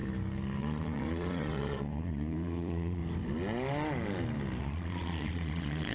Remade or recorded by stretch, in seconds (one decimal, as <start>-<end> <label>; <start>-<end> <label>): 0.0-0.6 recorded; 0.6-3.0 remade; 3.0-4.6 recorded; 4.6-5.9 remade